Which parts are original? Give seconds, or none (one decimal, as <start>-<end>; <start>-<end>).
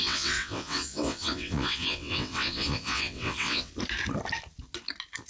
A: 3.7-5.3